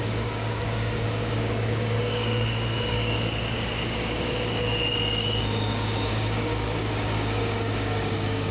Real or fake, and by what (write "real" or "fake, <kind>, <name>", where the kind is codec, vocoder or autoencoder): fake, codec, DAC